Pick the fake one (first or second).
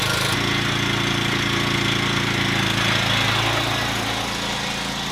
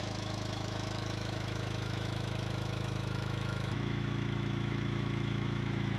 second